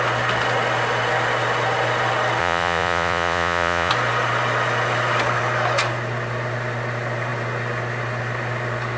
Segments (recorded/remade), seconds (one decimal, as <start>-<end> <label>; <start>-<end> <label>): 0.0-2.4 recorded; 2.4-3.9 remade; 3.9-9.0 recorded